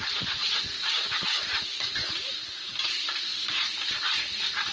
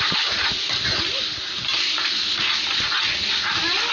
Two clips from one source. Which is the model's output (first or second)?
first